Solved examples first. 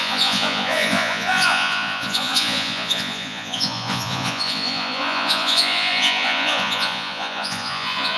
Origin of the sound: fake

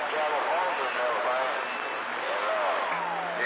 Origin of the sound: real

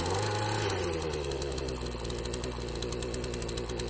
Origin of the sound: real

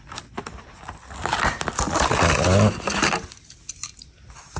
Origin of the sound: real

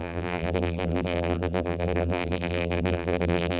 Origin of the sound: fake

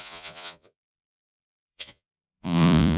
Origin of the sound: fake